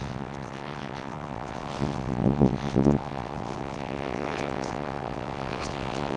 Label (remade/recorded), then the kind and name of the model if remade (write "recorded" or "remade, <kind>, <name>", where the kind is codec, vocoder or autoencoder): remade, vocoder, WaveNeXt